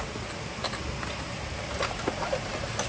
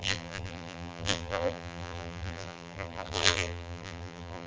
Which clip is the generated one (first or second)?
second